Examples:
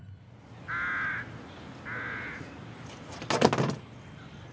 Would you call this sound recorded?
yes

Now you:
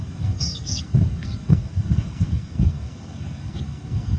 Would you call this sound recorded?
no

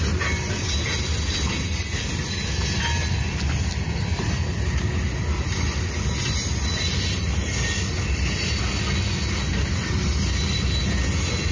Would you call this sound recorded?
yes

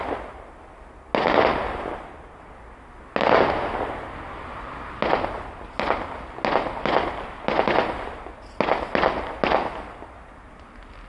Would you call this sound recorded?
yes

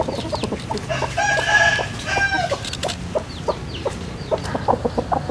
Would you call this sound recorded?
yes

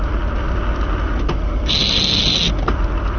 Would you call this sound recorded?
yes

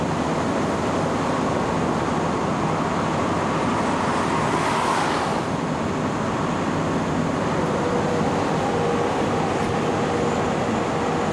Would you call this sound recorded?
yes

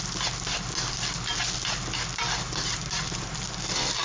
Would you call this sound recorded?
yes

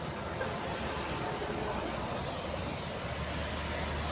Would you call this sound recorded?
yes